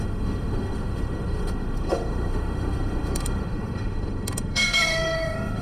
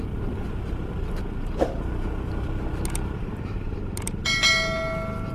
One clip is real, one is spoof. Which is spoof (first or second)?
first